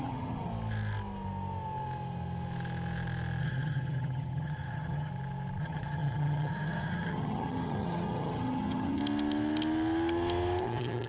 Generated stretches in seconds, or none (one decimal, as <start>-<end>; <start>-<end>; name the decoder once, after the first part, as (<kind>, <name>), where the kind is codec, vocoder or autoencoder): 0.0-0.5 (vocoder, HiFi-GAN); 3.4-5.1; 5.6-9.0; 10.6-11.1